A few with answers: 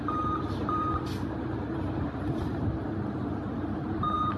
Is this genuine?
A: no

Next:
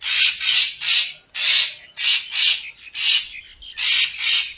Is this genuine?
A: yes